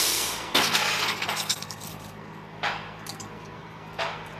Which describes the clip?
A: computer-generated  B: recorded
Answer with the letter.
A